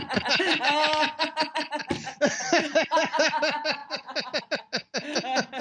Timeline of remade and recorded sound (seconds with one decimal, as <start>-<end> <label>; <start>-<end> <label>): 0.0-5.6 recorded